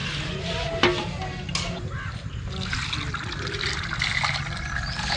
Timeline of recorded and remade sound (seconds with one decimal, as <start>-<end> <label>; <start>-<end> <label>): 0.0-3.1 recorded; 3.1-5.2 remade